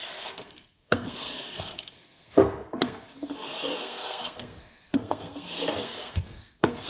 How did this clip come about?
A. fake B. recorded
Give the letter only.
A